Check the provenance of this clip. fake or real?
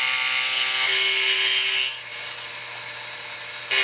real